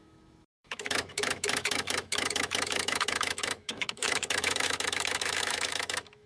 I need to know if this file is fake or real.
fake